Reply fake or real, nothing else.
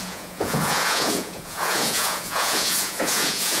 fake